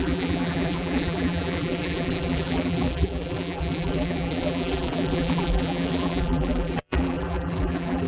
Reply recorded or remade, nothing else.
remade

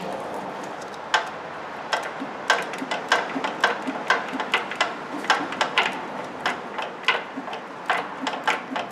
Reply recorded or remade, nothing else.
recorded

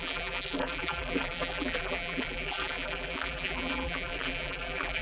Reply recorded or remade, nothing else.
remade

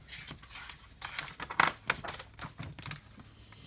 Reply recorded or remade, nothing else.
recorded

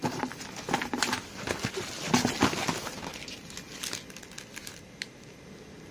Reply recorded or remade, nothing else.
recorded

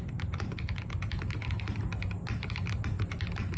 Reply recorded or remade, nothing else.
recorded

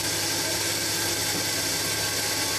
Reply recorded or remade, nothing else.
recorded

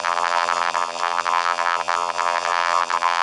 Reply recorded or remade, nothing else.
remade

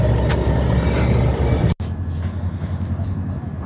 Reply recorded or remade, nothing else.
recorded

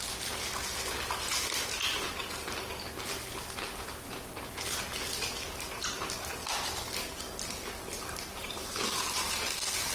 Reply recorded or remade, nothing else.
recorded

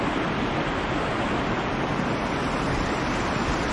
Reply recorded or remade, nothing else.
recorded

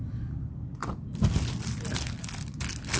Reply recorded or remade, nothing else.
recorded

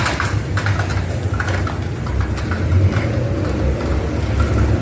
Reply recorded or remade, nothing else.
recorded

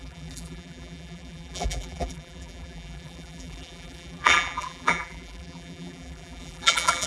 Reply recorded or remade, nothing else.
remade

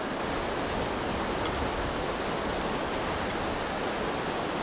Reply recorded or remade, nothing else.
recorded